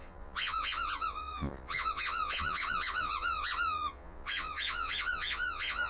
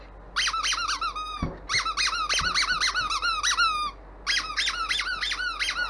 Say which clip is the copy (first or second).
first